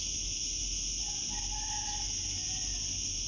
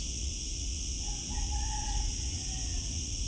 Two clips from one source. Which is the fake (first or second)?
second